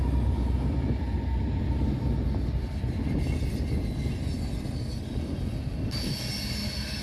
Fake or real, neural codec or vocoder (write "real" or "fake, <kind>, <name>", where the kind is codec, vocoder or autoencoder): real